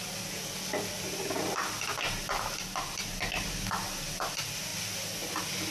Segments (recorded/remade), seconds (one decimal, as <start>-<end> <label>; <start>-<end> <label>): 0.0-5.7 recorded